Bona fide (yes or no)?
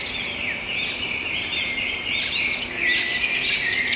no